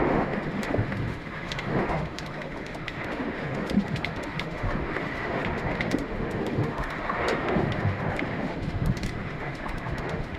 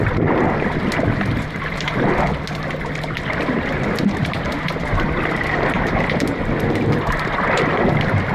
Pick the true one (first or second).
second